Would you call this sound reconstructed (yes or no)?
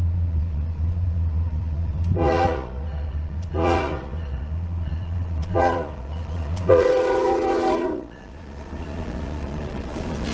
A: yes